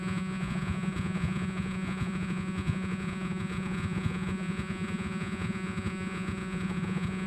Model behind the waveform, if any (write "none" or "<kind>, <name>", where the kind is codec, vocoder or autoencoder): vocoder, Vocos